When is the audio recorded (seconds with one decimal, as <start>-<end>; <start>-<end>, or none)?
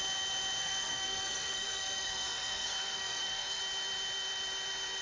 0.0-0.6; 3.6-5.0